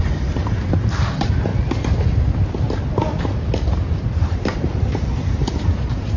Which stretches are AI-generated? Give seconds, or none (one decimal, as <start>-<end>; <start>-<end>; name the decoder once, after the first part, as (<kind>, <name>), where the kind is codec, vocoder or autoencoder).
0.0-1.5 (vocoder, BigVGAN v2); 3.2-6.2